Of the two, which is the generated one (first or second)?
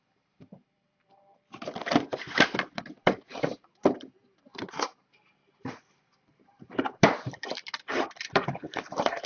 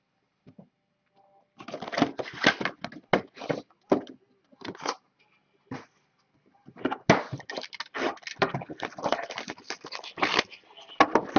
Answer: first